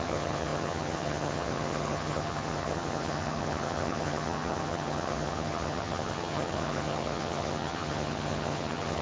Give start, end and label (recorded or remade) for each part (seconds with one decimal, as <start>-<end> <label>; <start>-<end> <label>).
0.0-9.0 remade